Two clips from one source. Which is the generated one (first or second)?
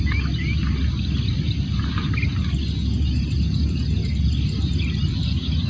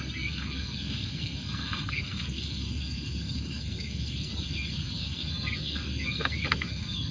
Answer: second